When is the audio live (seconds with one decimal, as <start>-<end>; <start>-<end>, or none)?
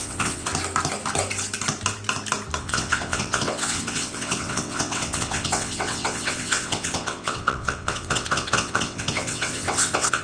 0.5-2.6